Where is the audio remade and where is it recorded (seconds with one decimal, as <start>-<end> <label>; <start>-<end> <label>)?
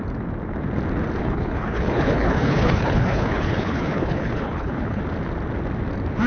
0.0-1.2 recorded; 1.2-5.0 remade; 5.0-6.3 recorded